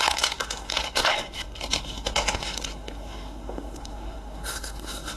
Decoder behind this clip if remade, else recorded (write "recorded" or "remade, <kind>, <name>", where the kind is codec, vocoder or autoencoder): remade, codec, SNAC